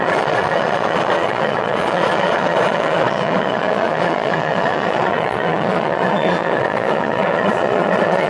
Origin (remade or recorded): remade